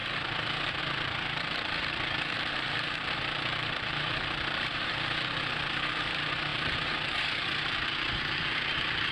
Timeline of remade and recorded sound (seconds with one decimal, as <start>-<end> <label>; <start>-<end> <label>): 0.0-9.1 remade